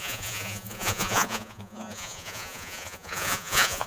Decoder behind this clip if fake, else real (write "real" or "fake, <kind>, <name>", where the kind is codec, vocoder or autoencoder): fake, vocoder, Vocos